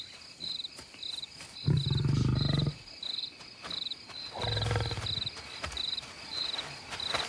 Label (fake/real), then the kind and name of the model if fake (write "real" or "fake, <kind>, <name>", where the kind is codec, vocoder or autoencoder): real